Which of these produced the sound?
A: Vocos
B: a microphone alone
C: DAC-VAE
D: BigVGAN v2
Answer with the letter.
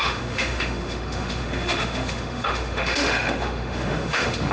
C